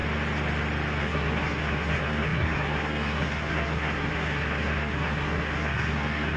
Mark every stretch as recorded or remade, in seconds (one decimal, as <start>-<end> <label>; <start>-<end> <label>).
0.0-1.0 recorded; 1.0-6.4 remade